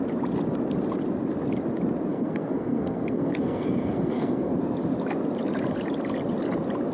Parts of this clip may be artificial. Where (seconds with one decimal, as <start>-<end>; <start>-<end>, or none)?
2.1-4.5